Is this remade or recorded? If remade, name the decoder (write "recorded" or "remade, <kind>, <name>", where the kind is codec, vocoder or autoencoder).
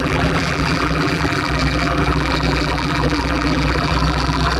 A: remade, vocoder, BigVGAN v2